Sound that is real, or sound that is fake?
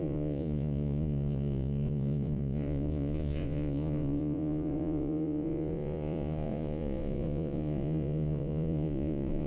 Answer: fake